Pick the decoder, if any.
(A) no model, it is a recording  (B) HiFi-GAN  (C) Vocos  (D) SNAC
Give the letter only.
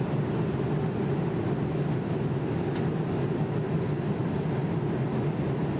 A